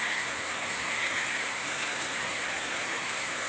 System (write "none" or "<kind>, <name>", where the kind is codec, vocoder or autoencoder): codec, SNAC